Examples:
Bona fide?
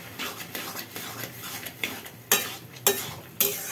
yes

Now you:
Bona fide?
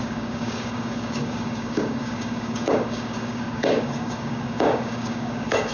no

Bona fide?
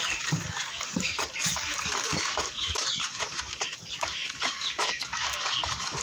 no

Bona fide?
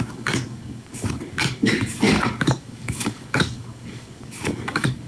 no